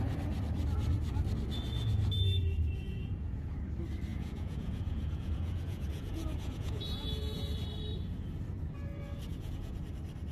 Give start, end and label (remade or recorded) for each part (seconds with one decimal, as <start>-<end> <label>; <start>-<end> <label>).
0.0-2.7 recorded; 2.7-3.6 remade; 3.6-4.1 recorded; 4.1-7.5 remade; 7.5-9.3 recorded; 9.3-9.8 remade; 9.8-10.3 recorded